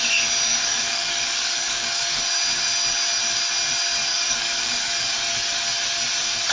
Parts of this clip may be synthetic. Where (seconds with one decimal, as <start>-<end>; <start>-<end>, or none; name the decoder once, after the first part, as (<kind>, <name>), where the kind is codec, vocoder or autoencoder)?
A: 0.5-2.2 (codec, DAC); 4.1-4.9